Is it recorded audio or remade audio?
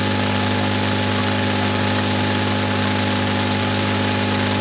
recorded